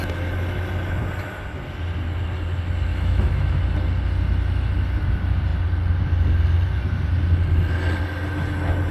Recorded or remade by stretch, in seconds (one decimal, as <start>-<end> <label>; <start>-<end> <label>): 0.0-2.9 recorded; 2.9-3.6 remade; 3.6-8.9 recorded